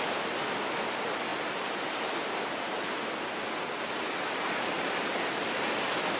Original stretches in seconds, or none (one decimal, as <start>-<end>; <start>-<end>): 0.0-6.2